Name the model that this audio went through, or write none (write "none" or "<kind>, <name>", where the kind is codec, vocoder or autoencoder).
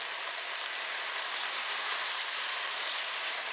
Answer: none